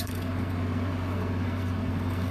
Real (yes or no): no